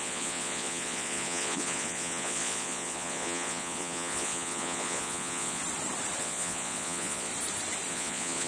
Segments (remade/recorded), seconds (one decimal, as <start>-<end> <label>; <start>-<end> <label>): 0.0-5.6 remade; 5.6-6.2 recorded; 6.2-7.3 remade; 7.3-7.9 recorded; 7.9-8.5 remade